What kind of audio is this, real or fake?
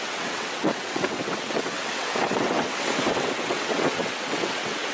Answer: fake